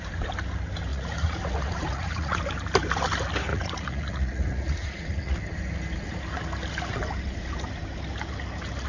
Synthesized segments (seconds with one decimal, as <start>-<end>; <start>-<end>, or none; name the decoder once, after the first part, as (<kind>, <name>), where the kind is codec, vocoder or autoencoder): 0.9-2.4 (vocoder, Vocos); 3.5-5.4